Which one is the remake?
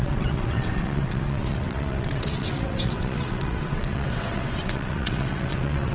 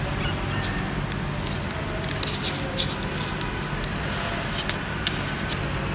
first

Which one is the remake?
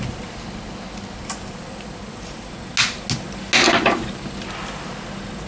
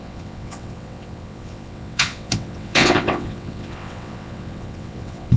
second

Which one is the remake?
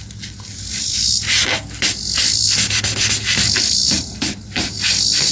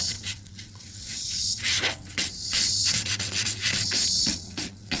second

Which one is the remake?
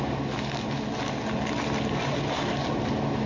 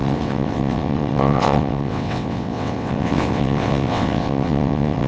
second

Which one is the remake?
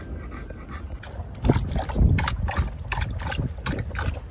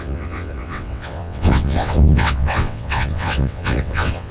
second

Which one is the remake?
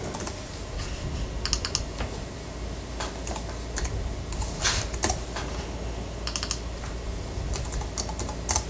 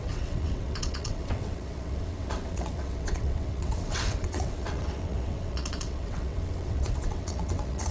second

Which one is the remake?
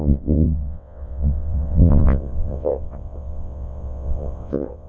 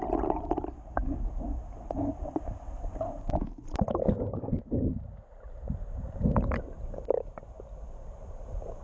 first